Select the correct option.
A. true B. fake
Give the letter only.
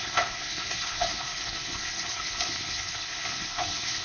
B